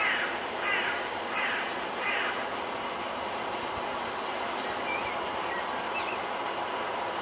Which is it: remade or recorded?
recorded